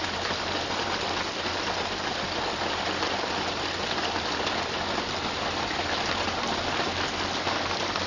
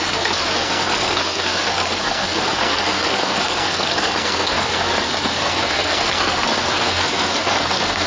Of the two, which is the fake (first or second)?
second